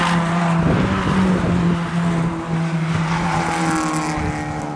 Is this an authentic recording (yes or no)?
yes